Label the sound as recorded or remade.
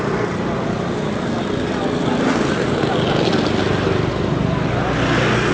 recorded